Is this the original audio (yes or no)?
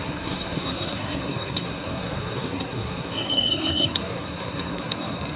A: no